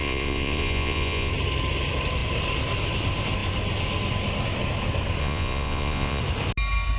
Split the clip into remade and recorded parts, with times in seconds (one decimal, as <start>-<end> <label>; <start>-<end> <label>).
0.0-1.3 remade; 1.3-5.2 recorded; 5.2-6.2 remade; 6.2-7.0 recorded